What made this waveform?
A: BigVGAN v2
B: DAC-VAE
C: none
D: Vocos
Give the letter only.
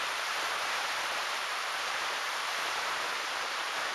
A